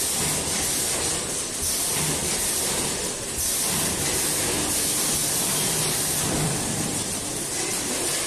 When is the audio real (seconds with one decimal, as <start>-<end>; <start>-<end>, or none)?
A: 0.0-2.2; 2.9-5.2

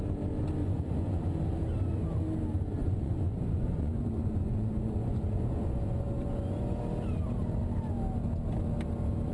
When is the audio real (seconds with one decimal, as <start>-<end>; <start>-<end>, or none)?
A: 0.0-0.6; 1.3-2.8; 6.8-9.3

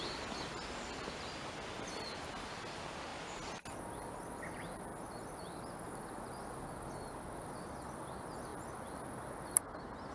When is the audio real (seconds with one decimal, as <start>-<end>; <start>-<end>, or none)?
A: 0.0-10.1